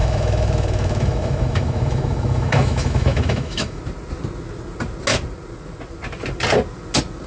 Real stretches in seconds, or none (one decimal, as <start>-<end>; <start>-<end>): 3.8-7.3